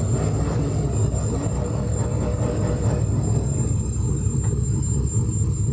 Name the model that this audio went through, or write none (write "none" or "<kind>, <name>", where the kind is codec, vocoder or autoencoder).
none